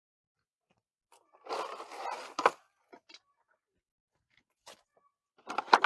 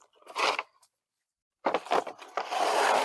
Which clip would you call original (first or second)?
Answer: first